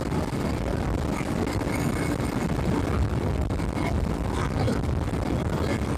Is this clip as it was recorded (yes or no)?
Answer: yes